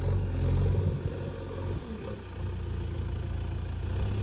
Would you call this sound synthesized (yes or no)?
no